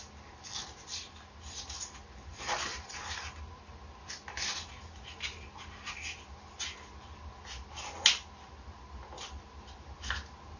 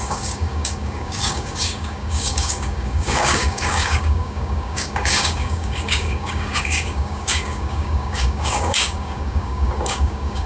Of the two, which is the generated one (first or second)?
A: second